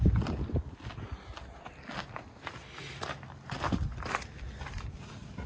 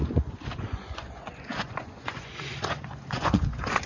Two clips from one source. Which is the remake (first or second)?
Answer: second